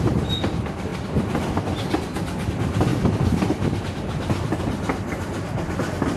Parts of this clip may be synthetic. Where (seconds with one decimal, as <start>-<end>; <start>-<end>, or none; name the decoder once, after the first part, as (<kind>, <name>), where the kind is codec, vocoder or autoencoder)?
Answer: none